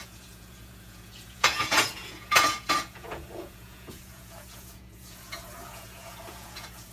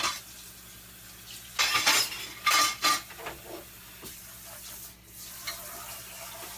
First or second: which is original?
second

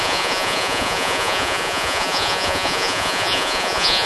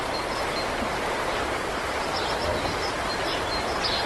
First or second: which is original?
second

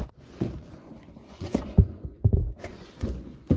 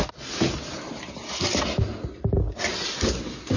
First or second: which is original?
second